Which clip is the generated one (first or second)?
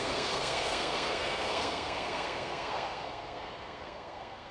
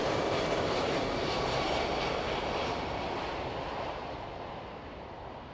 first